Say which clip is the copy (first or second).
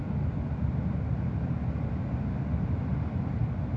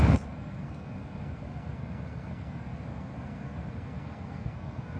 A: second